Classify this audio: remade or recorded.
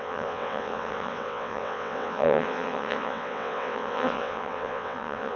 remade